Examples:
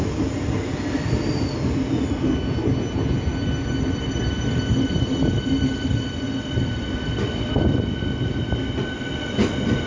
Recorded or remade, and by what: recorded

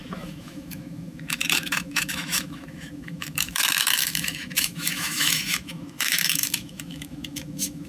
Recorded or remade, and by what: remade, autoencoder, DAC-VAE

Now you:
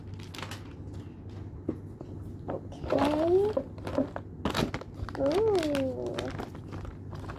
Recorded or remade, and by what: recorded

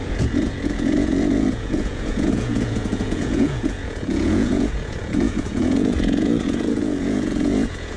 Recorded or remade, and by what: remade, vocoder, Vocos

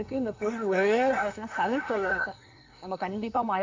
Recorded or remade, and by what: remade, codec, SNAC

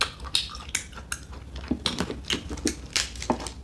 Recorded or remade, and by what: recorded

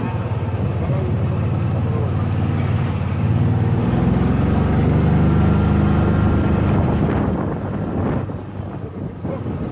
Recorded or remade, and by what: recorded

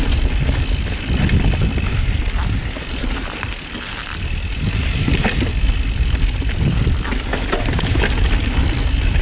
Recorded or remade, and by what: recorded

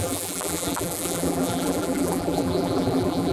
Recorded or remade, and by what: remade, vocoder, BigVGAN v2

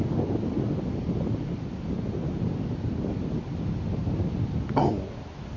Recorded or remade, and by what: recorded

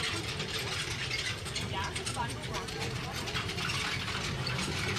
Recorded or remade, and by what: recorded